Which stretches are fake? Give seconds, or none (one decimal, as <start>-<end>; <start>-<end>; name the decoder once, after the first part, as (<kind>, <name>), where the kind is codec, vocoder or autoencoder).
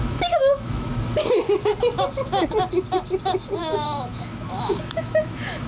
0.0-0.9 (autoencoder, DAC-VAE); 3.6-5.7